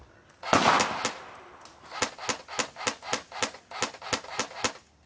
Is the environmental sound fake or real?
real